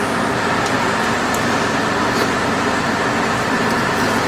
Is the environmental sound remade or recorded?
remade